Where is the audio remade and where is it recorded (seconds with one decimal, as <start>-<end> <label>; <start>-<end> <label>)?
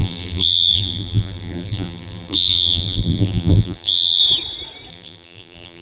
0.0-4.2 remade; 4.2-4.9 recorded; 4.9-5.8 remade